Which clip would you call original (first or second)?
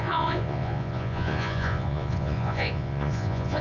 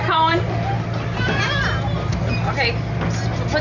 second